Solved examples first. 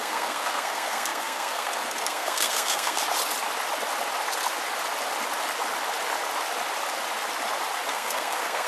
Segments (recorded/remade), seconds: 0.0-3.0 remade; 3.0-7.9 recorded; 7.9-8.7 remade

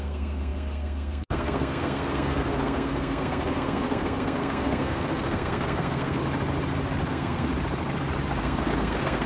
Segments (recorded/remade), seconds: 0.0-6.2 remade; 6.2-7.1 recorded; 7.1-7.5 remade; 7.5-8.4 recorded; 8.4-9.3 remade

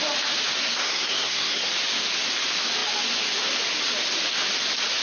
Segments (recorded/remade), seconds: 0.0-0.6 recorded; 0.6-1.7 remade; 1.7-5.0 recorded